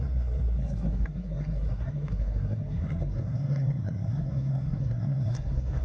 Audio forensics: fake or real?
fake